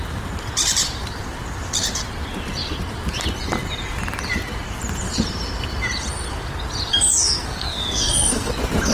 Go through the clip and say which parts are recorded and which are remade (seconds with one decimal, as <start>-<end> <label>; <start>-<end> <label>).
0.0-6.9 recorded; 6.9-8.5 remade; 8.5-8.9 recorded